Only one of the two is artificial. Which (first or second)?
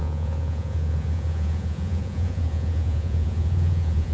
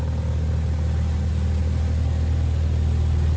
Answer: first